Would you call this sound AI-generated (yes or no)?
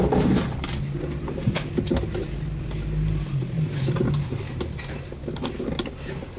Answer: no